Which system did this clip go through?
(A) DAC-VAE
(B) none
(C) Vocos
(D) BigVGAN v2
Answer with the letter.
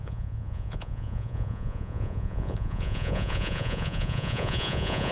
C